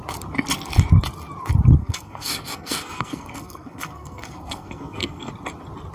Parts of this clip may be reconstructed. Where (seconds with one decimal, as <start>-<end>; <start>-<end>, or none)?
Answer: 1.8-5.3